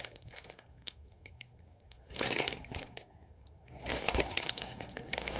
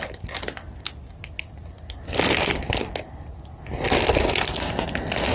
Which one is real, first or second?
second